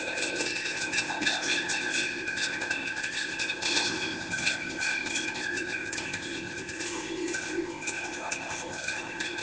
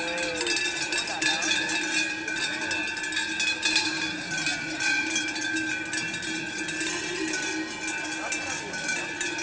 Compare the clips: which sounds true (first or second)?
second